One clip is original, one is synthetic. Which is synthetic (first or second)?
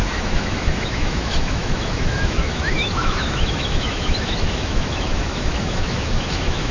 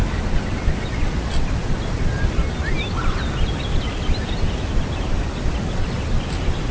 first